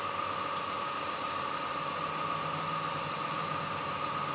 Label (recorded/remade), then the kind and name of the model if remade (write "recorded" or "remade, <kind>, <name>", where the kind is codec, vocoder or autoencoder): recorded